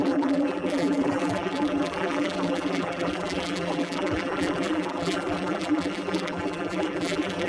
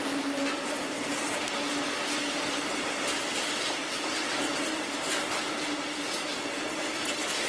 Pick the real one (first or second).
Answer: second